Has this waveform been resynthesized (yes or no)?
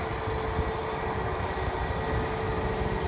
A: no